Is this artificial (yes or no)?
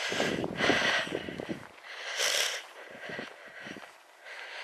no